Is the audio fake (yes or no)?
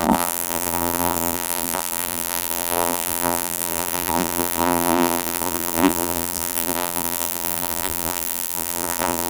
yes